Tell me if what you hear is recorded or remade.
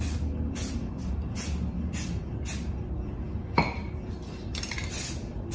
recorded